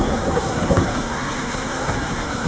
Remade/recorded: remade